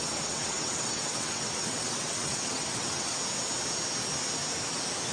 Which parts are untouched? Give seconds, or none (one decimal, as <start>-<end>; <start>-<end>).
3.1-5.1